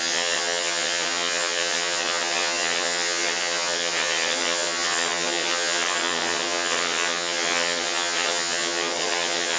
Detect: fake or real fake